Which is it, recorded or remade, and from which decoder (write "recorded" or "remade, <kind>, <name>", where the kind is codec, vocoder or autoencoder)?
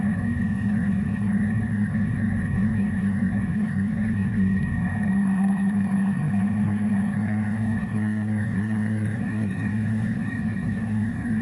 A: remade, codec, SNAC